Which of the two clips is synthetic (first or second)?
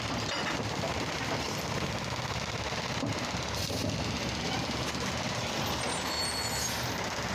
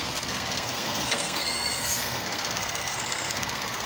second